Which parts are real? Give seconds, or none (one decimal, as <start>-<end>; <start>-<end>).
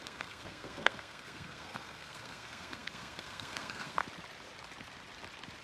4.0-5.6